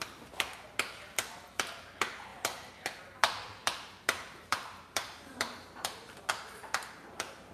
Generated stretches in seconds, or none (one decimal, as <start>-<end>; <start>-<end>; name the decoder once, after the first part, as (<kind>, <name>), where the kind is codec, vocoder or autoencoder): 3.6-6.3 (vocoder, BigVGAN v2)